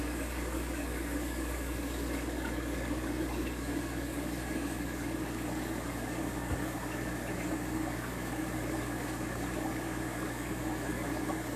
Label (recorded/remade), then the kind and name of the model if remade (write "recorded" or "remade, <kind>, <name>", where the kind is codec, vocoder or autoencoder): remade, codec, DAC